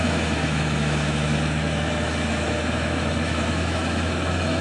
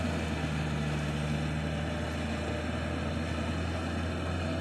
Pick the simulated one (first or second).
first